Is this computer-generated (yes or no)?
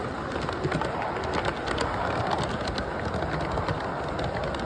no